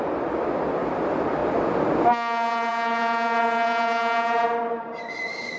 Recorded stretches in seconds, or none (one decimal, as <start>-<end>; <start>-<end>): 0.0-5.6